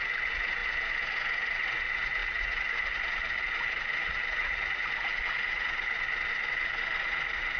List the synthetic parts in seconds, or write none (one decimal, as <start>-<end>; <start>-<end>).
0.0-7.6